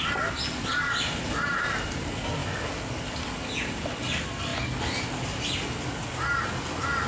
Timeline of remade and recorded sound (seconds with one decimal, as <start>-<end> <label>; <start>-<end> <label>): 0.0-7.1 recorded